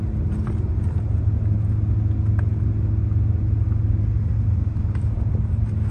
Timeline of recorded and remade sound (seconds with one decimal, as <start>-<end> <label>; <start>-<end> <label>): 0.0-5.9 recorded